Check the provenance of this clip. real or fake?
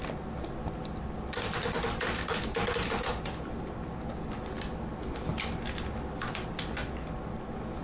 real